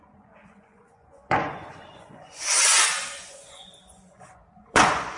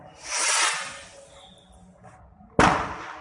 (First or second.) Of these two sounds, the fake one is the first